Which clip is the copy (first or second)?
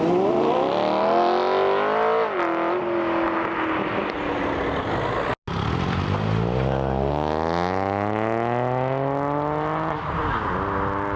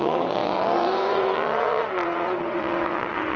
second